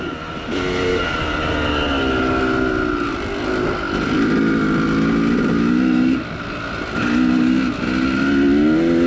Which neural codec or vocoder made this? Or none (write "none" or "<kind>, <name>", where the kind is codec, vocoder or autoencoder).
none